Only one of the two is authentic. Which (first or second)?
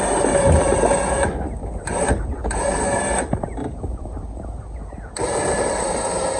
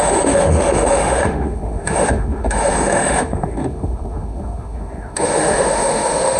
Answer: first